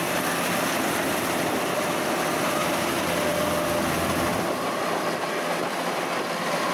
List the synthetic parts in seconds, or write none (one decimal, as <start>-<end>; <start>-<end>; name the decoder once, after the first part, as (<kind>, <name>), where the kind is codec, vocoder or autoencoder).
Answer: none